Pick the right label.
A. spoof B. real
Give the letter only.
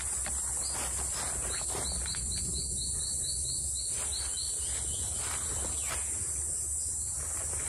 B